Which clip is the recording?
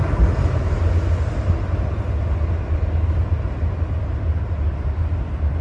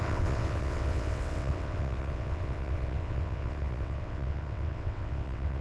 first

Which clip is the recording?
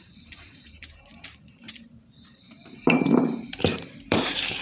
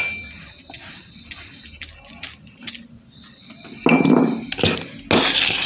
second